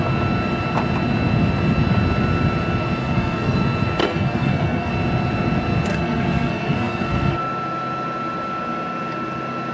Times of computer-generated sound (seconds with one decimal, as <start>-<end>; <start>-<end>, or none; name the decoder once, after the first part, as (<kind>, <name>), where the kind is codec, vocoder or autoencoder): 3.0-3.6 (codec, SNAC); 4.0-4.9; 5.9-7.4